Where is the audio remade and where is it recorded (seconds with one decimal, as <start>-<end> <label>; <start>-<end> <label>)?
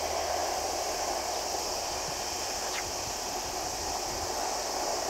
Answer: 0.0-5.1 recorded